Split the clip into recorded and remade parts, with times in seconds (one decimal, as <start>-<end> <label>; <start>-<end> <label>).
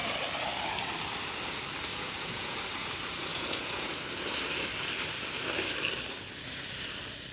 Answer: 0.0-1.9 recorded; 1.9-2.6 remade; 2.6-3.3 recorded; 3.3-3.9 remade; 3.9-7.3 recorded